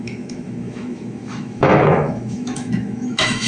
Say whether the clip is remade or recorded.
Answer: remade